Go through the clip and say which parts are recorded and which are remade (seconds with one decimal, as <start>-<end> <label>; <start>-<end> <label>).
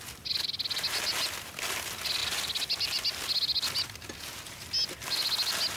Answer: 0.0-5.8 recorded